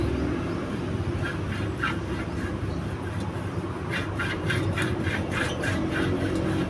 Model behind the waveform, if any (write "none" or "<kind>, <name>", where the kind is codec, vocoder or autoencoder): none